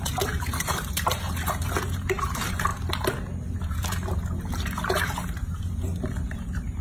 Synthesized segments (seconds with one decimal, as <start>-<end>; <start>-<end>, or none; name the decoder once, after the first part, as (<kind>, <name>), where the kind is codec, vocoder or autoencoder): 0.0-2.7 (vocoder, BigVGAN v2); 3.6-6.8